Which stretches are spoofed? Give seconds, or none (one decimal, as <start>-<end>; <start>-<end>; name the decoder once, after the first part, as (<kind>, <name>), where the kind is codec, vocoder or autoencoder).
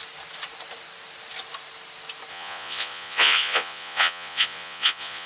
2.3-5.3 (vocoder, Vocos)